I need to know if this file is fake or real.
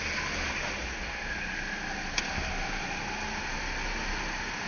real